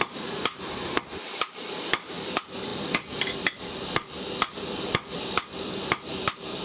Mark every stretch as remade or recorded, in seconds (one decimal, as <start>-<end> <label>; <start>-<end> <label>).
0.0-2.7 remade; 2.7-6.1 recorded; 6.1-6.6 remade